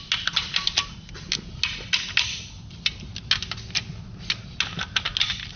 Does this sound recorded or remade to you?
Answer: recorded